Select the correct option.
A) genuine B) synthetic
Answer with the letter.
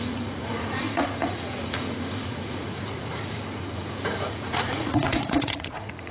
B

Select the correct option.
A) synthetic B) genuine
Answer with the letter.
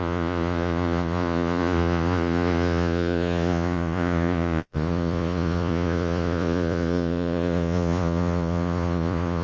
A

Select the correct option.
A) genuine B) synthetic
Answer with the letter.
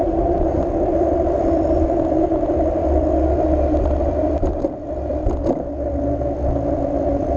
B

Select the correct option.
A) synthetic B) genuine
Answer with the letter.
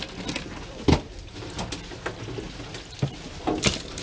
B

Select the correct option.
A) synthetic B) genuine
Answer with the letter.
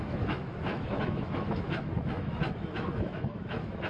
A